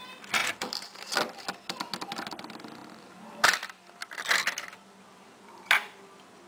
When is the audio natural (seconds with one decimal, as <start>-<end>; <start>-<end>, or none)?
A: 0.0-0.4; 1.1-6.5